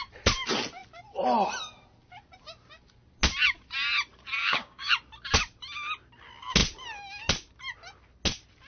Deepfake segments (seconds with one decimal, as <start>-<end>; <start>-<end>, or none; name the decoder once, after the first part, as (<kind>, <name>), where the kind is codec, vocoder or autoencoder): 4.4-4.9 (codec, DAC)